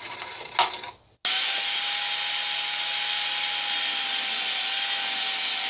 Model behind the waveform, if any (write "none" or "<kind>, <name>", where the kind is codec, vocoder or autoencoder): none